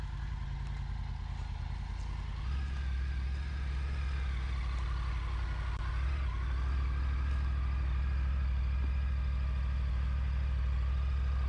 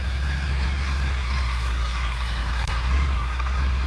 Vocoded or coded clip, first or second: second